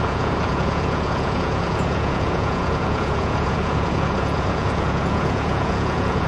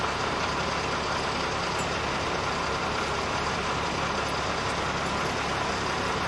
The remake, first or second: first